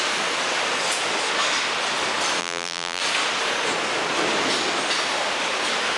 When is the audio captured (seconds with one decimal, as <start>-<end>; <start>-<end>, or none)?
0.0-2.4; 3.0-6.0